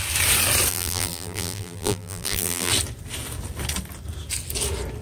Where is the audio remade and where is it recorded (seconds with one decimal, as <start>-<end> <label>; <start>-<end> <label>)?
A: 0.0-0.7 recorded; 0.7-2.7 remade; 2.7-5.0 recorded